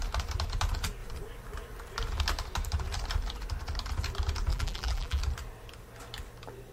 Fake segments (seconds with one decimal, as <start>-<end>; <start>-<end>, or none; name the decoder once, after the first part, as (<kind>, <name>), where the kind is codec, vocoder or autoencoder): 4.5-5.2 (vocoder, BigVGAN v2)